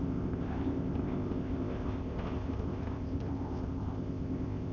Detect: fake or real fake